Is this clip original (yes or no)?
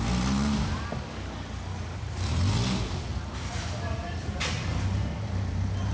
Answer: yes